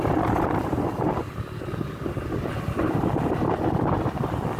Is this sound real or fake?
real